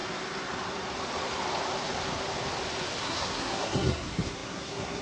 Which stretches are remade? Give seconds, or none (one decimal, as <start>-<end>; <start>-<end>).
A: 3.0-5.0